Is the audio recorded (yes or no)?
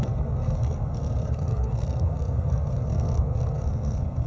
no